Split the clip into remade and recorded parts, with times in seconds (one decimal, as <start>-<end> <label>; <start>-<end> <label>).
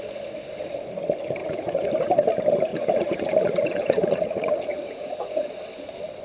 0.0-1.4 recorded; 1.4-1.9 remade; 1.9-2.7 recorded; 2.7-5.5 remade; 5.5-6.2 recorded